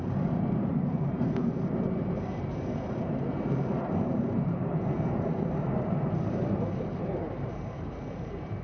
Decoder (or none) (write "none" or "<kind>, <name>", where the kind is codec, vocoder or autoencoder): vocoder, BigVGAN v2